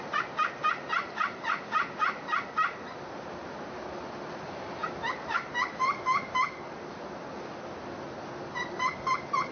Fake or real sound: real